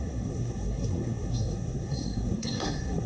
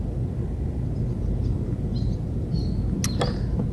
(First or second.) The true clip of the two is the second